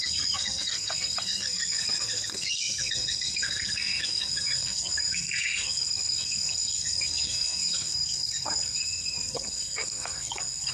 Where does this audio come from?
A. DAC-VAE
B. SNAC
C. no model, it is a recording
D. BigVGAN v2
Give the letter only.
B